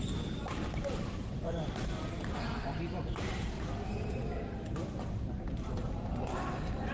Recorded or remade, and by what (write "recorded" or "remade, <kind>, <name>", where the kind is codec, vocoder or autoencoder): remade, vocoder, BigVGAN v2